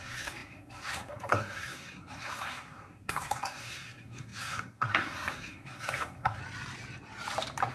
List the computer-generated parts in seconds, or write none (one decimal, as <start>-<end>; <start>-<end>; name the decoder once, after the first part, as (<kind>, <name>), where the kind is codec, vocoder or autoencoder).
0.0-6.4 (codec, SNAC)